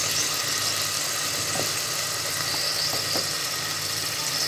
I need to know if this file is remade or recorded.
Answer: recorded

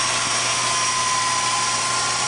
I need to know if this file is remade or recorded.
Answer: recorded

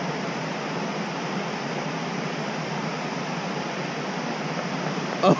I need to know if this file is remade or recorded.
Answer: recorded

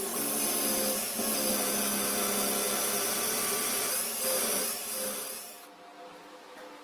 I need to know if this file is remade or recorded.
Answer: recorded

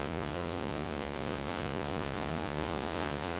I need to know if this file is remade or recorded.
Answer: remade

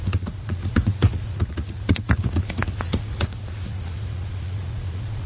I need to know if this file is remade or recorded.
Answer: remade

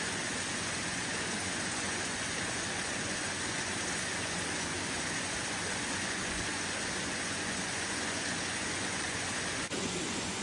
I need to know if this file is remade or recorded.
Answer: remade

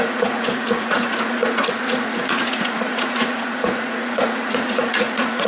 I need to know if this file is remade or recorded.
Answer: remade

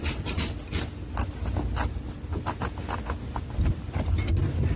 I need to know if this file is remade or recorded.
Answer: recorded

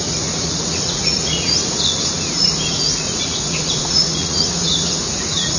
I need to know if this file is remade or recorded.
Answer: remade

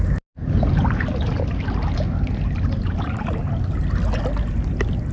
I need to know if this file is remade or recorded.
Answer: recorded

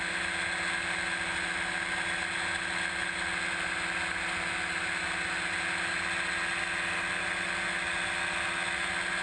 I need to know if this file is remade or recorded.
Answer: recorded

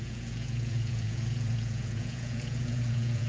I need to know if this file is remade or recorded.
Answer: remade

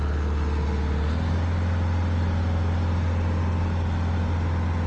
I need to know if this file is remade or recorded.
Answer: recorded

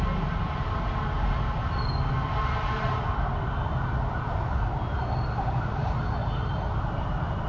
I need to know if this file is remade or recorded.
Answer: recorded